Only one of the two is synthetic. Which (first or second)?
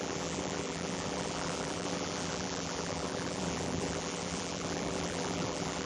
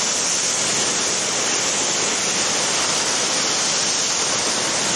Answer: first